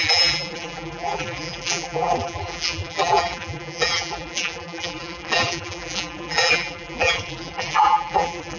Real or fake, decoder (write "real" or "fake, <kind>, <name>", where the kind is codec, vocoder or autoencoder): fake, vocoder, BigVGAN v2